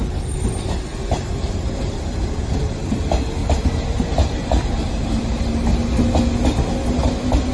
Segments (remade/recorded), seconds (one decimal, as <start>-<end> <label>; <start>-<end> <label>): 0.0-0.9 recorded; 0.9-1.8 remade; 1.8-3.4 recorded; 3.4-5.5 remade; 5.5-7.5 recorded